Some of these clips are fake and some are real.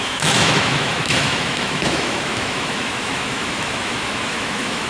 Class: fake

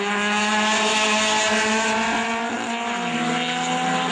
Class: real